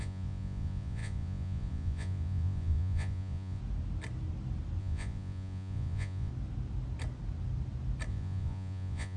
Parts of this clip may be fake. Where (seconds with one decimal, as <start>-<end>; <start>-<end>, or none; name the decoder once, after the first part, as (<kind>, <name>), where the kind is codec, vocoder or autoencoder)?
0.0-3.6 (vocoder, Vocos); 4.8-6.3; 8.1-9.2